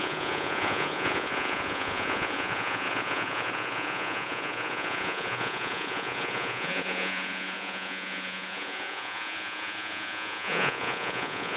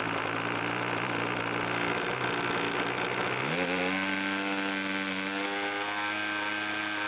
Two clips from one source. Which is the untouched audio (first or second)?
second